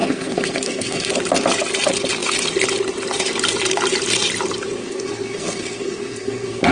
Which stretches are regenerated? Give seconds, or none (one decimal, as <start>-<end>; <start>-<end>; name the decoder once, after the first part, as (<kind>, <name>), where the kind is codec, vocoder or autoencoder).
0.0-1.1 (codec, SNAC); 4.8-6.7